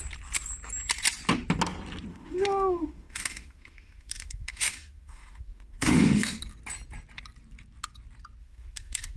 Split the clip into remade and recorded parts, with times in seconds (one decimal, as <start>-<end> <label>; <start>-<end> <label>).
0.0-2.1 recorded; 2.1-6.4 remade; 6.4-8.4 recorded; 8.4-9.2 remade